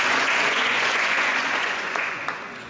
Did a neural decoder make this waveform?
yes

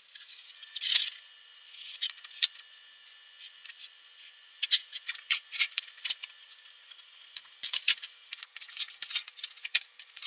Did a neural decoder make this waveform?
yes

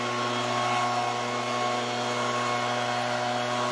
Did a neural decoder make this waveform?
no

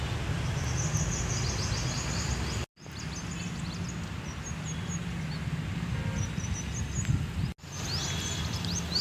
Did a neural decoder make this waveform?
no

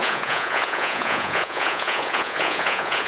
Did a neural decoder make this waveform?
yes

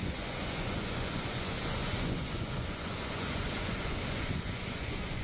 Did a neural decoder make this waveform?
yes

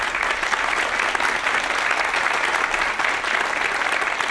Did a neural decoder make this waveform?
no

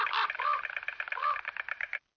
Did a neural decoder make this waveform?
no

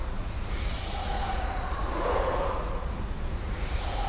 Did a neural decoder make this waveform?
yes